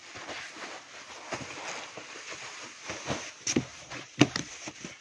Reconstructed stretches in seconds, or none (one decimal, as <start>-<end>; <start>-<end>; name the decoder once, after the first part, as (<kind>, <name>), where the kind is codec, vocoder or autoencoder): 3.7-4.5 (vocoder, BigVGAN v2)